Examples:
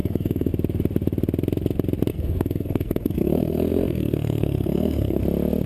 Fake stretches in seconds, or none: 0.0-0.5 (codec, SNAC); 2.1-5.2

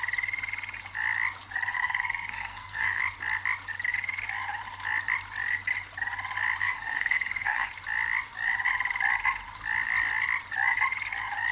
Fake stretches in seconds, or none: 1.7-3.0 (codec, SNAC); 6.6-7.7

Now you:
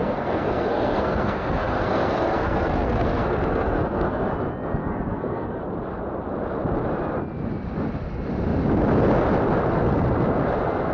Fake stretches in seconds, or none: 0.0-4.3 (codec, SNAC); 4.8-5.6